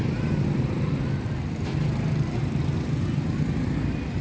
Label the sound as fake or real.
real